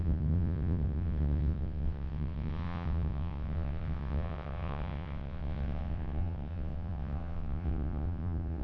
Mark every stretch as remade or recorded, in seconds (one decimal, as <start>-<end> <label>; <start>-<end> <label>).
0.0-8.6 remade